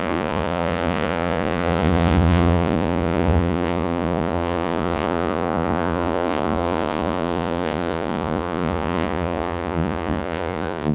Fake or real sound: fake